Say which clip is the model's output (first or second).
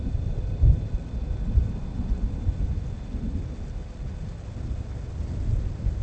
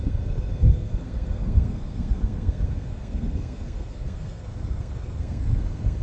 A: second